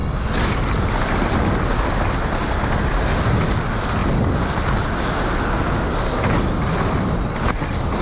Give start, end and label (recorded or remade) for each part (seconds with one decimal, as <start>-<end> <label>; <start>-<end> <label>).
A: 0.0-8.0 recorded